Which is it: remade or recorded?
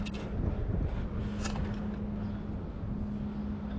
recorded